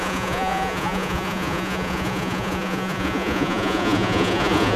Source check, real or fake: fake